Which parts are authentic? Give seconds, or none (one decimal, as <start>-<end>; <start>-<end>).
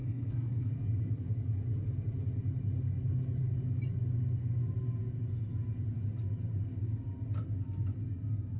0.7-8.6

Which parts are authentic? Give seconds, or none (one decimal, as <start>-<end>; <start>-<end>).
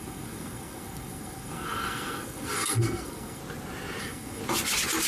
3.4-4.0; 4.4-5.1